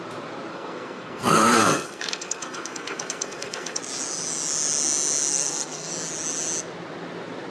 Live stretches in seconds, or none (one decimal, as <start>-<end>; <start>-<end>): 0.0-0.5; 3.8-5.3; 5.9-7.5